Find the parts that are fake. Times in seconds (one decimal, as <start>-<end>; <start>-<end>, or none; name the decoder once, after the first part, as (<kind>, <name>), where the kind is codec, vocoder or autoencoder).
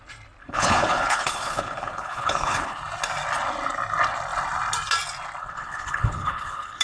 0.4-2.8 (codec, HILCodec); 5.4-6.8